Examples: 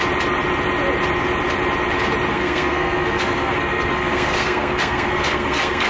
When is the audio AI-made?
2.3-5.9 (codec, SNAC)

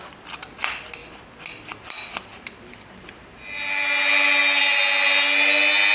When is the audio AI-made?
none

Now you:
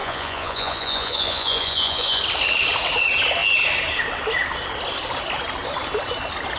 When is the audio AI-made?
0.0-2.2 (vocoder, Vocos)

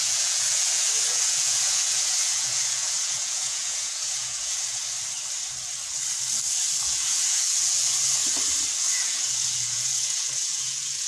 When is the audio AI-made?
0.0-4.8 (vocoder, Vocos); 6.8-8.2; 8.8-11.1